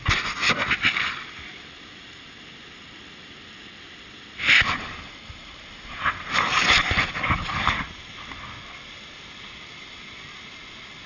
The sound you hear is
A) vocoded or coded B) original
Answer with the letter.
B